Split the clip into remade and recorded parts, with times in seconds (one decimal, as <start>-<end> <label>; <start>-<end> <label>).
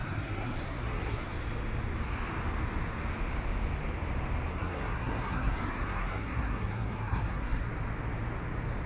0.0-1.3 remade; 1.3-4.5 recorded; 4.5-7.7 remade; 7.7-8.9 recorded